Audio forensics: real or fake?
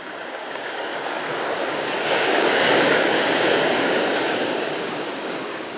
fake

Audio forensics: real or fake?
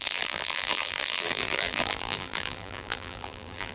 fake